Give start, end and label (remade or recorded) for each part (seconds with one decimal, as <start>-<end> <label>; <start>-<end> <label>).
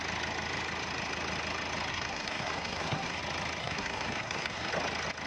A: 0.0-1.9 recorded; 1.9-3.2 remade; 3.2-3.6 recorded; 3.6-4.7 remade; 4.7-5.3 recorded